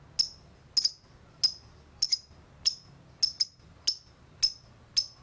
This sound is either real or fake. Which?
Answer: real